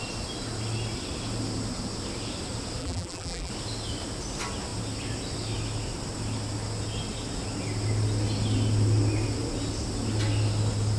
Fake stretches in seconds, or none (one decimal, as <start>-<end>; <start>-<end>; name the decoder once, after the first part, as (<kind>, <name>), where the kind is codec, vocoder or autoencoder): 2.8-3.5 (vocoder, BigVGAN v2)